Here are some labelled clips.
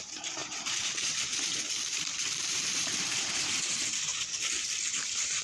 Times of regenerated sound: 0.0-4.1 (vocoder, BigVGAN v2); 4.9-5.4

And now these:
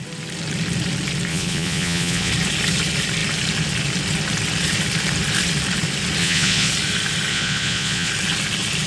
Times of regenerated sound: 1.3-2.3 (vocoder, Vocos); 6.2-6.7; 7.3-8.1

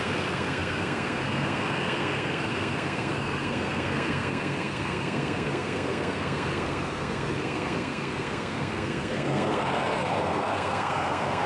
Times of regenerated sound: 0.0-11.5 (codec, SNAC)

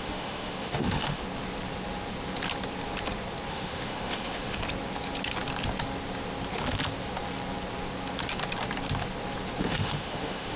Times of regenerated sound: 0.0-1.2 (autoencoder, DAC-VAE); 3.5-4.6; 9.6-10.6